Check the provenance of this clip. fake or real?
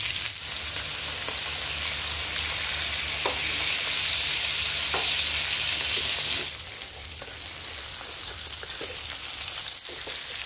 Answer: real